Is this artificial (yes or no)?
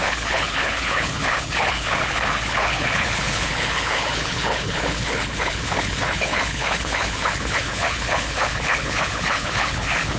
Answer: yes